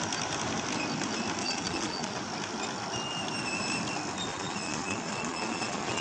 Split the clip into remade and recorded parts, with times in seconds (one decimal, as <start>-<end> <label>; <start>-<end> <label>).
0.0-1.4 recorded; 1.4-2.2 remade; 2.2-4.3 recorded; 4.3-6.0 remade